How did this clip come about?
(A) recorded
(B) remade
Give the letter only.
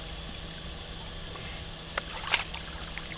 A